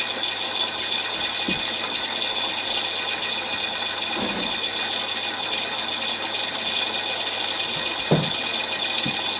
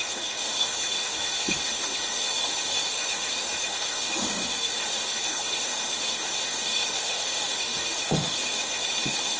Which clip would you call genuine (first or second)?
first